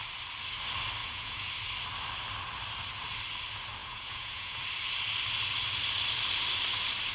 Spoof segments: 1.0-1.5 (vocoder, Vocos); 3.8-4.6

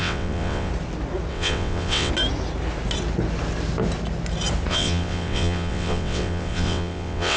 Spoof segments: 0.0-0.7 (vocoder, WaveNeXt); 1.3-2.1; 4.7-7.4

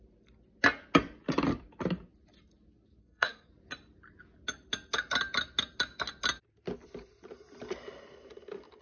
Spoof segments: 3.0-3.5 (codec, SNAC)